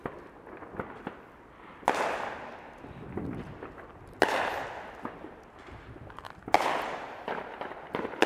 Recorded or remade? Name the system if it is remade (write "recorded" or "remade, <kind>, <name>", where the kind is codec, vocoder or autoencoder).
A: recorded